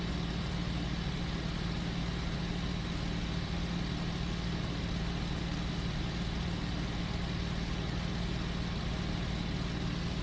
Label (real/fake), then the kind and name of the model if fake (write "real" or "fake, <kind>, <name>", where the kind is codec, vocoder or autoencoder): real